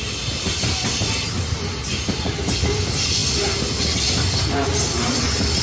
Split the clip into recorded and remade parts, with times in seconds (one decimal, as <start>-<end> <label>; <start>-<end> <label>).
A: 0.0-5.6 recorded